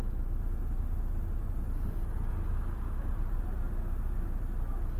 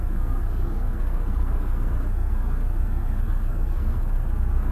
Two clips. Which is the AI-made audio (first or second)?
second